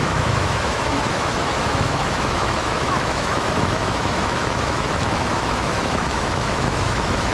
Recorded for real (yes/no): no